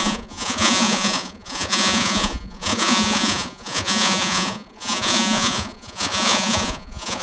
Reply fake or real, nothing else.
fake